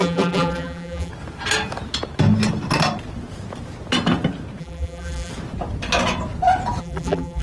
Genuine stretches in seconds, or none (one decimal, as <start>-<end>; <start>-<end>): 1.1-4.6; 5.3-6.8